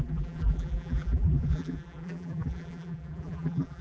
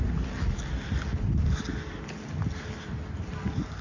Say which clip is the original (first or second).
second